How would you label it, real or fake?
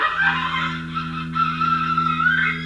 real